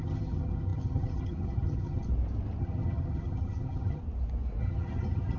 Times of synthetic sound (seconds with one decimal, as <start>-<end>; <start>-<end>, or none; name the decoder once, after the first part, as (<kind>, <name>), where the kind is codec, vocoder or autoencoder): 0.0-2.1 (vocoder, HiFi-GAN); 2.6-4.0; 4.6-5.4